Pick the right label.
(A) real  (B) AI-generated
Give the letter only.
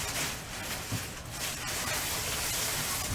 A